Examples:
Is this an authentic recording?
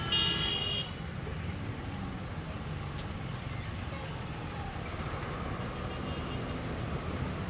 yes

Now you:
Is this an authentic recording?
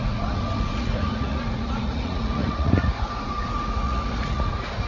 no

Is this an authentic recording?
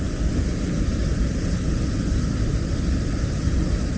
yes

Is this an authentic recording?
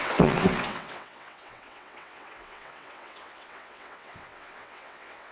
no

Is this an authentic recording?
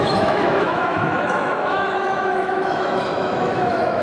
no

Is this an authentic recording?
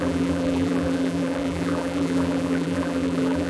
no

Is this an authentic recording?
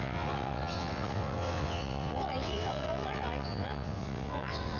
no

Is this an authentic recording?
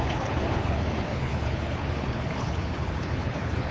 no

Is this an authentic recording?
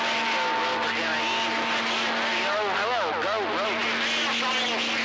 yes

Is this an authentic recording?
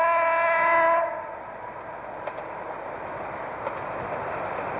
yes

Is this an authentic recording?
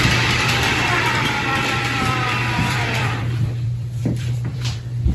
no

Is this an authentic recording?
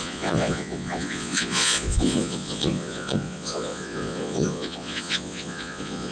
no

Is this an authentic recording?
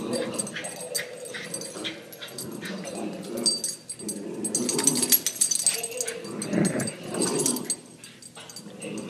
yes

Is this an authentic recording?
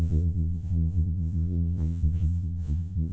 no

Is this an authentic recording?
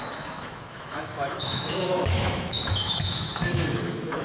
no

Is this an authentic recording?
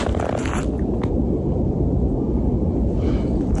yes